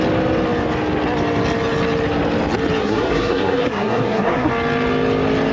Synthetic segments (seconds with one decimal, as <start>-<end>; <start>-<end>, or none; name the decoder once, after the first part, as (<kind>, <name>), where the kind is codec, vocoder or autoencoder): 2.8-4.5 (codec, SNAC)